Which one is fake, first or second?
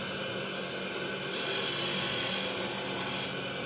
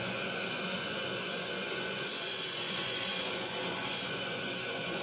second